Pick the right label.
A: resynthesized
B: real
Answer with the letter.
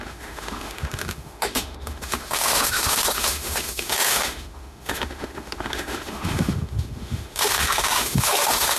A